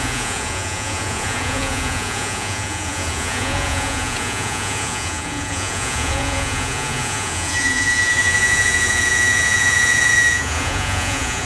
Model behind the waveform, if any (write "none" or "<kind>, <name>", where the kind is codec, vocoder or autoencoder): vocoder, Vocos